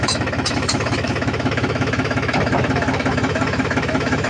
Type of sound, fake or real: fake